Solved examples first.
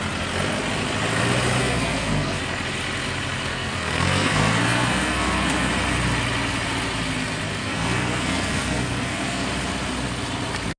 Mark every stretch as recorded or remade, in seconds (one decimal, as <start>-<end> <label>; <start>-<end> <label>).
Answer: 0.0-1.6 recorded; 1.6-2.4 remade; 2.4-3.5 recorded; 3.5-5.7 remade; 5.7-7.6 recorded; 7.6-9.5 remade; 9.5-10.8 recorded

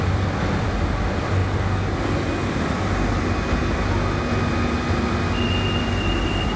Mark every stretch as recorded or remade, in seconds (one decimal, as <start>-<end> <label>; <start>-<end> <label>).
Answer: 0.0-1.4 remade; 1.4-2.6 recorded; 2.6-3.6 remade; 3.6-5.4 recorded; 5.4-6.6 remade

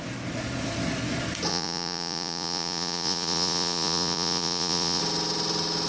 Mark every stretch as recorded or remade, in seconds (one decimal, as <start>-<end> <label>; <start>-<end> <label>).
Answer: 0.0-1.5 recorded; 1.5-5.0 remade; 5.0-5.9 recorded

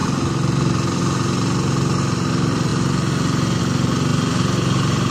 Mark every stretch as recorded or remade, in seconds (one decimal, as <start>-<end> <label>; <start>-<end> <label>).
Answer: 0.0-4.1 recorded; 4.1-5.1 remade

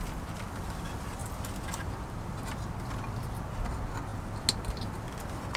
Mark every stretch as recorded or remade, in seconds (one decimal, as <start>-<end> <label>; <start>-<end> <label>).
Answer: 0.0-5.6 recorded